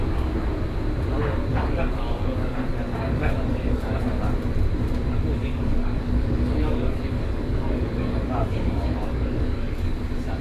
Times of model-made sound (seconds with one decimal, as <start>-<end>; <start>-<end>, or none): 1.5-4.0; 5.4-10.0